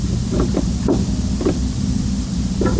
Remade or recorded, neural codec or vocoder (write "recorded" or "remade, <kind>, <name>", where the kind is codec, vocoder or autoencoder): recorded